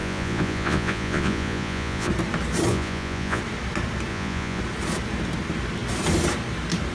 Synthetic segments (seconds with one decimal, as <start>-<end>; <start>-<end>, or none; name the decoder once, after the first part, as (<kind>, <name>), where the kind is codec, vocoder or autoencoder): 0.0-2.1 (vocoder, Vocos); 2.7-3.4; 4.1-4.6